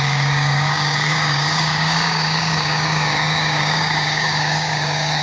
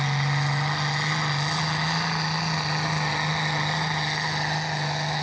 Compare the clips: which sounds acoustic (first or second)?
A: second